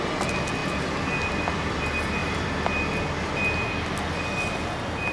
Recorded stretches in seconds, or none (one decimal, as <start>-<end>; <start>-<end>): 0.0-5.1